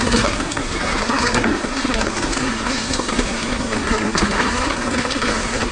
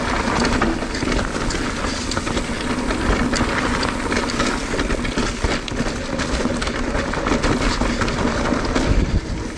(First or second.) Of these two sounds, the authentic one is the second